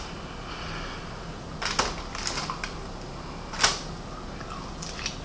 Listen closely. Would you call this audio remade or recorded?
recorded